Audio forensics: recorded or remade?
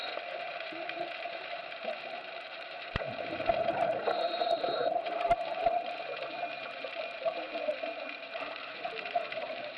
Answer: remade